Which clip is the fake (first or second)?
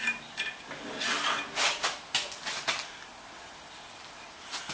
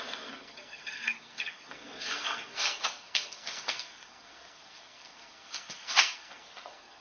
second